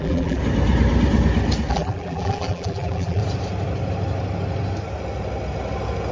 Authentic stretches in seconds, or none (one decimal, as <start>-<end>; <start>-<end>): 0.4-1.7; 3.2-6.1